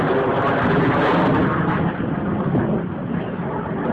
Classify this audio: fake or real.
real